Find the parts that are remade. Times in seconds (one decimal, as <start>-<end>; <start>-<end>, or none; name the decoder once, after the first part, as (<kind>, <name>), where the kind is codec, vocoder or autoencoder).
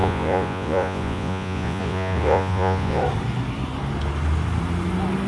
0.0-3.0 (vocoder, Vocos)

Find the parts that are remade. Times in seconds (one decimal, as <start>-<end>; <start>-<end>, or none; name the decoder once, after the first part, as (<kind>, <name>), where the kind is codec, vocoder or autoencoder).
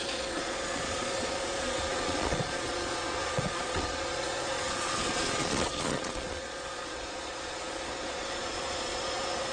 0.0-9.5 (vocoder, Vocos)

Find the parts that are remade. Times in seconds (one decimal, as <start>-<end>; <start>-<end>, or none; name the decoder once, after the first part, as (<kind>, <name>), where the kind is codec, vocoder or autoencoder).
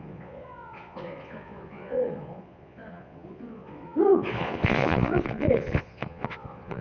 0.0-6.8 (vocoder, Vocos)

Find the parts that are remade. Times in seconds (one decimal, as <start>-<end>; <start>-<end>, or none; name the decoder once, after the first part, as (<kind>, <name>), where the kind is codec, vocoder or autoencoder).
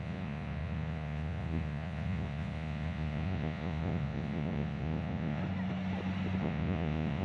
0.0-5.4 (vocoder, Vocos); 6.4-7.2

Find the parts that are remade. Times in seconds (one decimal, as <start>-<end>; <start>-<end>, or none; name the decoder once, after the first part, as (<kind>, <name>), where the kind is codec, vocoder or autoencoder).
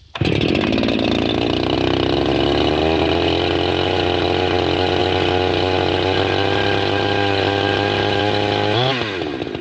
none